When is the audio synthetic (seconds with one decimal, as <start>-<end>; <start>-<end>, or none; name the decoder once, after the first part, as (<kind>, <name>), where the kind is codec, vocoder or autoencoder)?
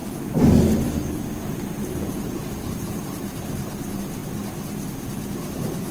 1.3-5.9 (vocoder, BigVGAN v2)